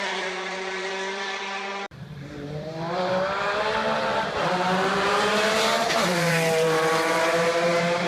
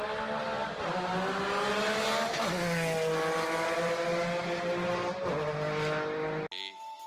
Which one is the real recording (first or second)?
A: second